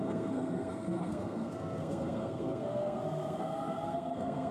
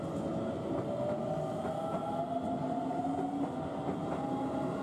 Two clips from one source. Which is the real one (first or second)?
second